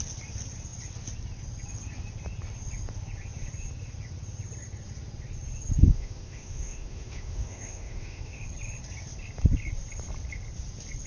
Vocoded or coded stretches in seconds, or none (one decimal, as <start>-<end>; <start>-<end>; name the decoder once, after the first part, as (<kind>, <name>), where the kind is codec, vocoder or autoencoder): 5.8-8.4 (autoencoder, DAC-VAE)